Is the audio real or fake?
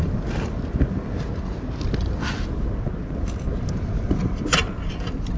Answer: real